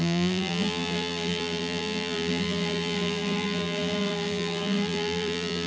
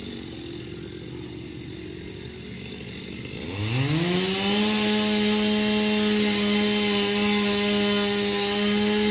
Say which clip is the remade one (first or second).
first